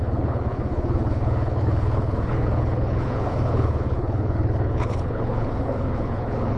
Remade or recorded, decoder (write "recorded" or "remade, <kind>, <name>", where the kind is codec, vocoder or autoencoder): remade, codec, HILCodec